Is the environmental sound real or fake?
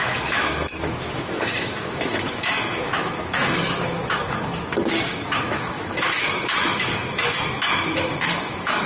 fake